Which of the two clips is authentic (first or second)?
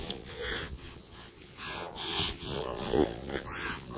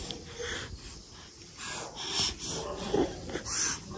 second